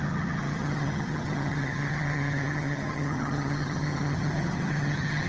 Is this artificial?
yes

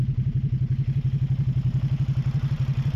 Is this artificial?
no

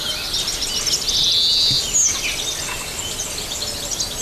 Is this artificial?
no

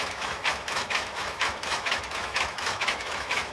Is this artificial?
yes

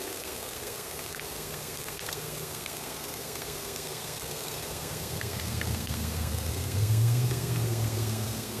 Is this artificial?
yes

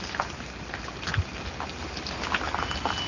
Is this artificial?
no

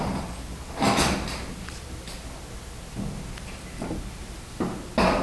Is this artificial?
no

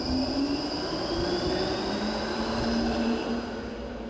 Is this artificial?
no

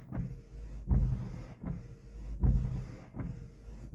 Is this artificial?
no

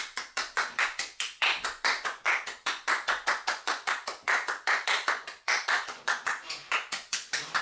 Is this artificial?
yes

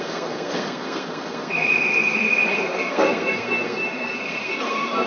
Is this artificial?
yes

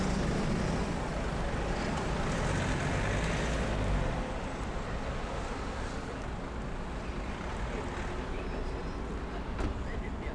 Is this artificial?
no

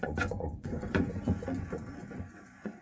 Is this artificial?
yes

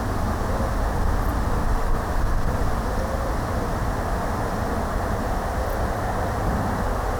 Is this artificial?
no